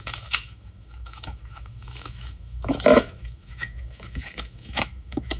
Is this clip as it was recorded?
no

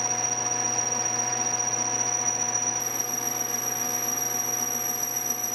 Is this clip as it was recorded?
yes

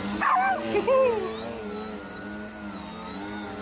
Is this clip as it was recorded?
yes